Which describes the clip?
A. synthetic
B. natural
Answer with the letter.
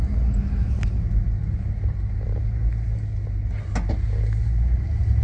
B